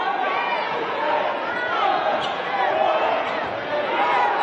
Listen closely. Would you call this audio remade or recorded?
remade